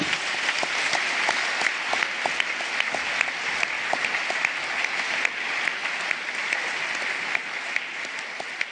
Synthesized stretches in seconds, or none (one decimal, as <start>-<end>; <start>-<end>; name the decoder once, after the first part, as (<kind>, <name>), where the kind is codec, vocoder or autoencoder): none